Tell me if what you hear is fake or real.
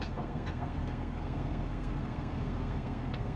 fake